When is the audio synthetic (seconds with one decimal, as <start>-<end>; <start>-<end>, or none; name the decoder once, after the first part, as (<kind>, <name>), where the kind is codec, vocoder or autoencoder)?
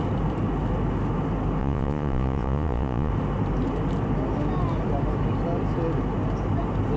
1.6-3.1 (vocoder, Vocos)